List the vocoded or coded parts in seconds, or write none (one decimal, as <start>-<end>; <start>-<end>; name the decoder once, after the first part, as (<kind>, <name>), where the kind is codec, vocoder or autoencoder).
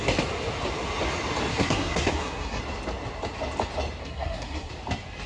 1.5-2.6 (codec, SNAC); 4.0-4.7